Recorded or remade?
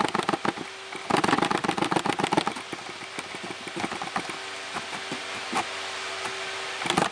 recorded